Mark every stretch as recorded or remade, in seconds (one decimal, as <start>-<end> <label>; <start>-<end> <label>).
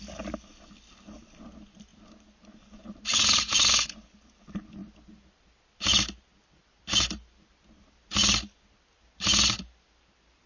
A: 0.0-10.5 recorded